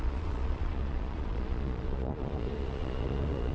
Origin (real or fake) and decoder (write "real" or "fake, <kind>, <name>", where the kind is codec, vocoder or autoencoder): fake, vocoder, Vocos